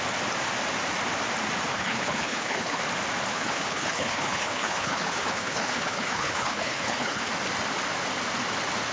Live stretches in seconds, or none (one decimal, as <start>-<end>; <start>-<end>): 0.0-1.7; 2.8-3.3; 7.3-8.9